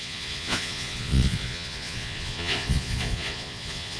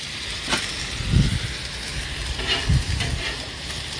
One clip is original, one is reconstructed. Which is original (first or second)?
second